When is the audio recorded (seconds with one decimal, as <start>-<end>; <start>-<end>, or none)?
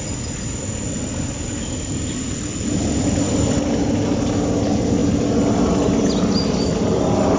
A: 0.0-7.4